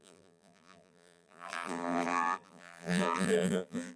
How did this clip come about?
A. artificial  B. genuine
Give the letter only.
A